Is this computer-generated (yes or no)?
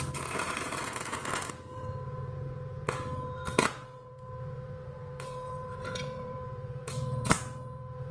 yes